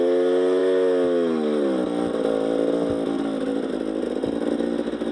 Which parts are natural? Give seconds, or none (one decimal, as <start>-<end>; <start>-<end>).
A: 0.0-5.1